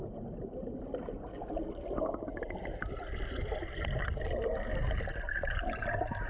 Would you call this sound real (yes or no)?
yes